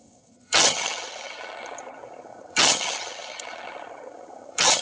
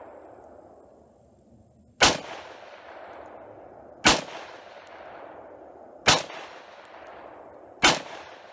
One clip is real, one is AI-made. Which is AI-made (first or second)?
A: first